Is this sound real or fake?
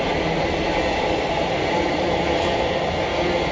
real